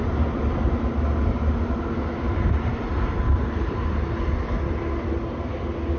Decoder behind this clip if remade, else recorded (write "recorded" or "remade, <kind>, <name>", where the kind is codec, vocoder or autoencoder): recorded